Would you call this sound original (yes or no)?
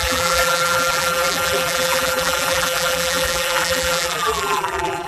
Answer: no